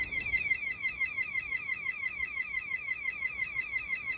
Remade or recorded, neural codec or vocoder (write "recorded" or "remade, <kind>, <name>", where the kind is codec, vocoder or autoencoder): recorded